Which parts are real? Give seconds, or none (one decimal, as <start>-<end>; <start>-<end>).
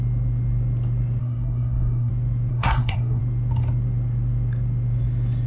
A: 0.0-1.2; 2.1-2.5; 3.2-5.5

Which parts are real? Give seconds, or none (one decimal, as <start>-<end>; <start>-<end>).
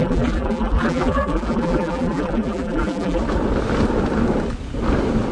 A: 3.2-5.3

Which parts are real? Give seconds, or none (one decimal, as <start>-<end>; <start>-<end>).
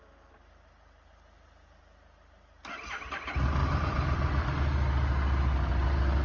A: 0.0-3.6; 4.5-6.2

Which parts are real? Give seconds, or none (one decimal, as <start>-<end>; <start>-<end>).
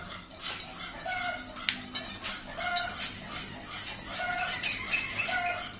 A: 0.7-4.2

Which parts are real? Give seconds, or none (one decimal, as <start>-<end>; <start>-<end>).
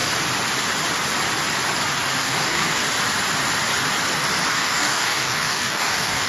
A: 0.0-2.2; 2.8-4.5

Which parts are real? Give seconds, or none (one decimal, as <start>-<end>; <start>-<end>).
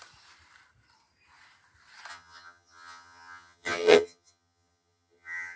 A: 0.0-2.1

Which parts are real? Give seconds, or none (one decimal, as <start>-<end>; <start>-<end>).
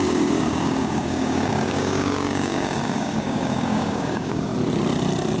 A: 4.5-5.4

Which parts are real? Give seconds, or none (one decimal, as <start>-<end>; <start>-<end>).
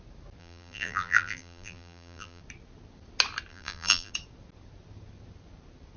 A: 0.0-0.4; 2.4-3.5; 4.1-6.0